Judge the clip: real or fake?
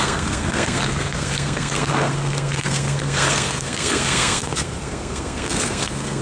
fake